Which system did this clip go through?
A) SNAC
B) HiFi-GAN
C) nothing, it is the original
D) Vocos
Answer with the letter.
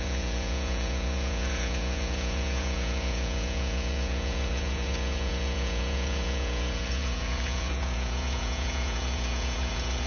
D